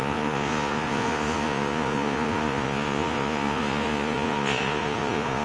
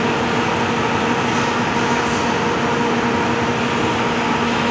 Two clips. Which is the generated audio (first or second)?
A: first